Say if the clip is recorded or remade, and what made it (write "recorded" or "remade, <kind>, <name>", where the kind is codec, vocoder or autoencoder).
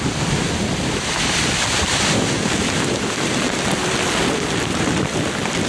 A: recorded